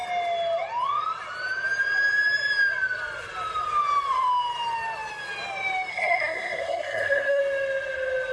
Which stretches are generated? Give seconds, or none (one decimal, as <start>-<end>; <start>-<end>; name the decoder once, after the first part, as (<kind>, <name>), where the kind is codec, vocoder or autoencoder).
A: 5.9-7.4 (codec, SNAC)